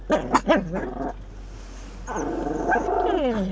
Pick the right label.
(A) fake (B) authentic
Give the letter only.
B